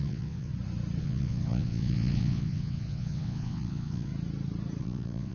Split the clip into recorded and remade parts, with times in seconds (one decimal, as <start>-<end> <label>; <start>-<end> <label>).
0.0-0.5 remade; 0.5-1.0 recorded; 1.0-4.1 remade; 4.1-4.8 recorded; 4.8-5.3 remade